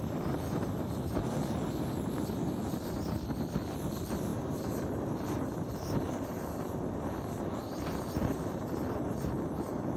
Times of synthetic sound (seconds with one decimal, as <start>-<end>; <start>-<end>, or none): 4.3-5.1